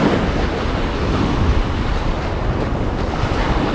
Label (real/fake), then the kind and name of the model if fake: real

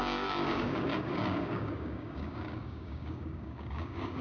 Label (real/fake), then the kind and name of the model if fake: fake, codec, DAC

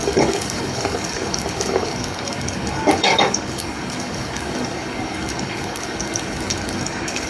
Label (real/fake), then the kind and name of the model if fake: fake, codec, DAC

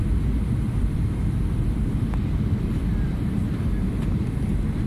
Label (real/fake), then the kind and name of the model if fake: real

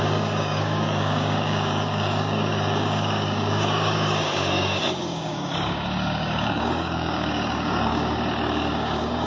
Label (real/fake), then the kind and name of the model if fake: fake, codec, DAC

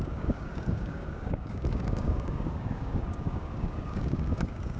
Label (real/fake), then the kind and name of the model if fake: fake, codec, DAC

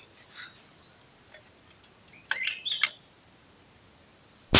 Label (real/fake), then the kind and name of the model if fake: real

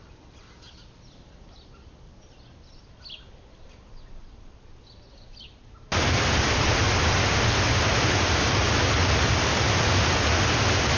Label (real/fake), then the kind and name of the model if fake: real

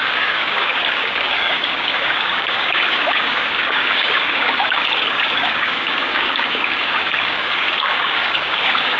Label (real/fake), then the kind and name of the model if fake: fake, codec, DAC